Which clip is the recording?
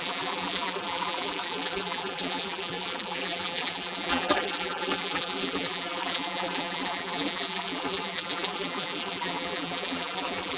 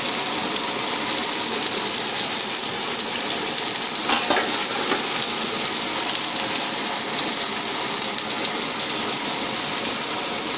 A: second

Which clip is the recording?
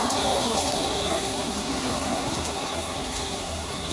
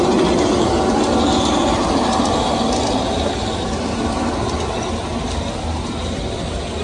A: second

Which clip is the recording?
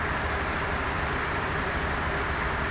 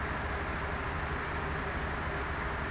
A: second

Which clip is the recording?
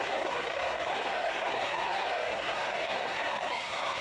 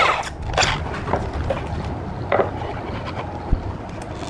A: second